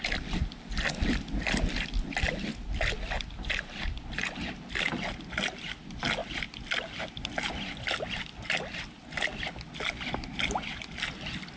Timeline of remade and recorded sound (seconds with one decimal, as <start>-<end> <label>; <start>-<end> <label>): 0.0-11.6 recorded